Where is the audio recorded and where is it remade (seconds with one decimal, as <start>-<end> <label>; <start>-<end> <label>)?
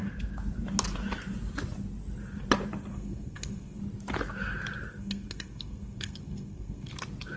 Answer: 0.0-2.9 recorded; 2.9-3.8 remade; 3.8-5.0 recorded; 5.0-6.9 remade; 6.9-7.4 recorded